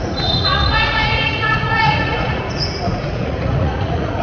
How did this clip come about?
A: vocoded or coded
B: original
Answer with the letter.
A